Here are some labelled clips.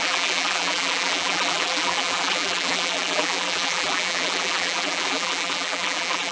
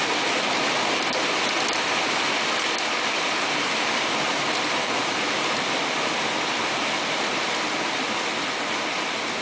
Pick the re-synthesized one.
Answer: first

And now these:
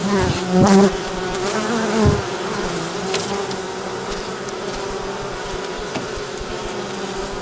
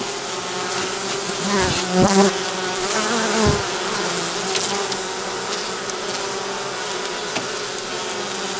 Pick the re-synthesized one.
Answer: first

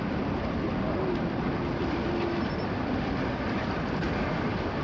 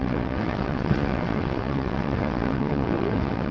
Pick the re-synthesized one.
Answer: second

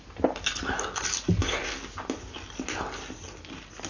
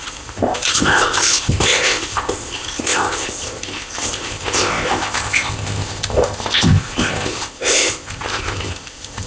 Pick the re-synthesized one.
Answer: second